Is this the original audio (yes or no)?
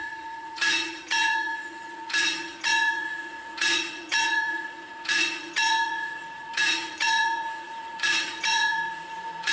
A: no